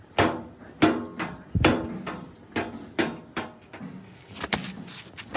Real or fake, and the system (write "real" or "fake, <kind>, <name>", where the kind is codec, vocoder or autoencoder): real